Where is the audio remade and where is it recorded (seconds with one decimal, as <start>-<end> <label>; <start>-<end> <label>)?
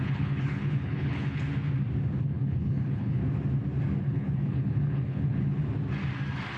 0.0-1.5 remade; 1.5-2.2 recorded; 2.2-3.2 remade; 3.2-4.0 recorded; 4.0-5.6 remade; 5.6-6.6 recorded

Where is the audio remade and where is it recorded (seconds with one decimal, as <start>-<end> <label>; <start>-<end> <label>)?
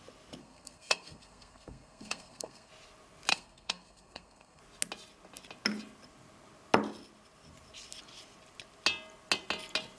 0.0-0.4 recorded; 0.4-2.7 remade; 2.7-3.3 recorded; 3.3-4.6 remade; 4.6-10.0 recorded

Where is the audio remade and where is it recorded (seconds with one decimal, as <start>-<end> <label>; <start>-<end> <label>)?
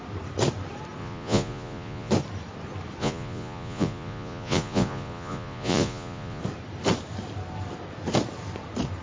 0.0-1.0 recorded; 1.0-2.1 remade; 2.1-3.0 recorded; 3.0-6.4 remade; 6.4-9.0 recorded